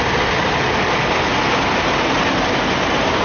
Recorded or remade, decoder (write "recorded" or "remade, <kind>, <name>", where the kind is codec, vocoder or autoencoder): recorded